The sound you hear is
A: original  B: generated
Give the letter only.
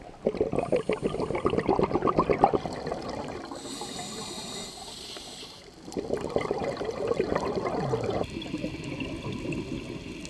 A